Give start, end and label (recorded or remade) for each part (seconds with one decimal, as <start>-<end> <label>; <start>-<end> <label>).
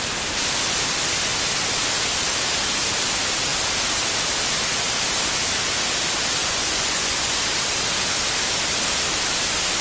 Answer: 0.0-6.4 recorded; 6.4-7.4 remade; 7.4-9.8 recorded